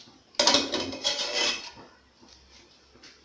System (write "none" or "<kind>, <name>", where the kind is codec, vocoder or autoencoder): none